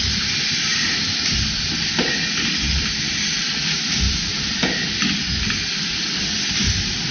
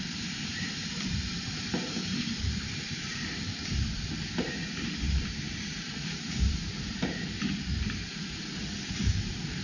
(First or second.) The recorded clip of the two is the first